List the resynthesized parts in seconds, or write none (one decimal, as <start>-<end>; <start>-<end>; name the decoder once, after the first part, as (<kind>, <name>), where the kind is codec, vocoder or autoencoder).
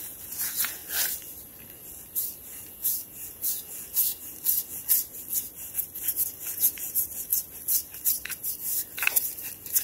0.0-0.8 (vocoder, Vocos); 2.7-4.0; 6.4-7.3